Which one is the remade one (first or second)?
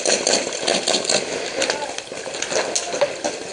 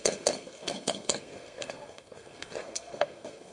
second